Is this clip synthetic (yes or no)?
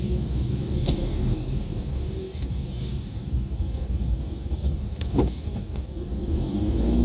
yes